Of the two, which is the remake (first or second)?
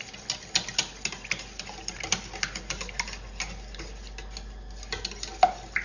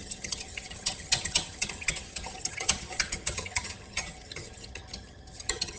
second